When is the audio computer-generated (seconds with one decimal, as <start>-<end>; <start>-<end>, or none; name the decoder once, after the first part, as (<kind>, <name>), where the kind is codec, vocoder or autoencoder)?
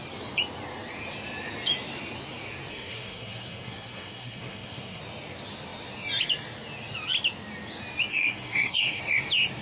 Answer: 2.7-5.0 (codec, SNAC); 8.1-9.0